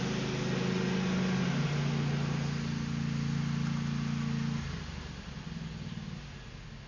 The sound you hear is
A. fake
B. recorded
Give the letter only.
B